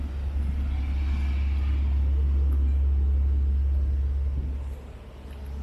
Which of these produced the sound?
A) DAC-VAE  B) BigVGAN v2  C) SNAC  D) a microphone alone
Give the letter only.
D